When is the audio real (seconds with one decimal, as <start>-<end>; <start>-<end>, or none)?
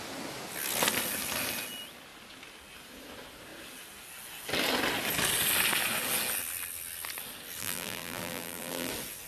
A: 0.0-7.6; 8.9-9.3